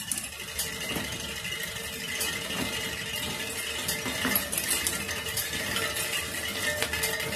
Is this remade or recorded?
recorded